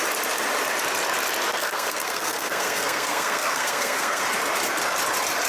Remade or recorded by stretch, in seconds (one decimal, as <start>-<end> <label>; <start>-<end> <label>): 0.0-1.5 recorded; 1.5-4.2 remade; 4.2-5.5 recorded